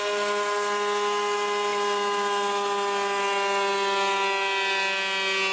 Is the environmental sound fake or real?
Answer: real